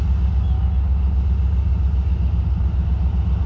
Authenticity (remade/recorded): recorded